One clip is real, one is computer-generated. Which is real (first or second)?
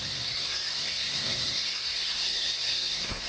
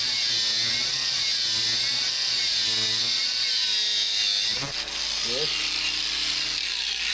second